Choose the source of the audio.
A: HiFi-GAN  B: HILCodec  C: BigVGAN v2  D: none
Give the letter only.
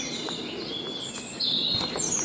D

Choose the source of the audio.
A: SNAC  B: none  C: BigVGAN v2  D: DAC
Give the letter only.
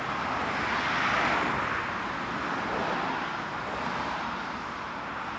B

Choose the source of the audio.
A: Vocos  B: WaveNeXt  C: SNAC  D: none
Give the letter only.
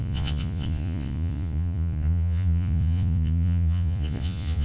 A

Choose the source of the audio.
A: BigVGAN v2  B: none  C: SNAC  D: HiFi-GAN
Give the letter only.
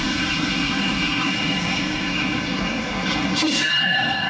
C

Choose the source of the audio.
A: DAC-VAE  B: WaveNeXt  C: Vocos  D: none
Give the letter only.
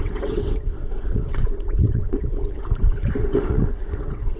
B